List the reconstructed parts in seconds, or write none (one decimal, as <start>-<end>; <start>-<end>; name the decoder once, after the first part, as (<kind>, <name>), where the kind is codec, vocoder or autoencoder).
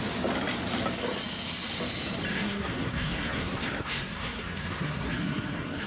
2.3-5.9 (codec, SNAC)